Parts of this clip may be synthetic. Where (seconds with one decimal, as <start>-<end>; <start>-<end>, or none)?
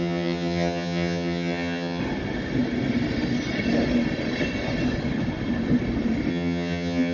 0.0-2.0; 6.3-7.1